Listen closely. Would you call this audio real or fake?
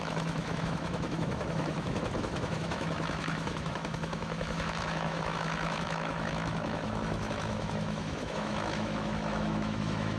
fake